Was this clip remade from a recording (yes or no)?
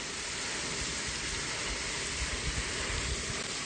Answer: no